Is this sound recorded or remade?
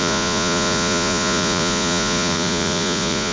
remade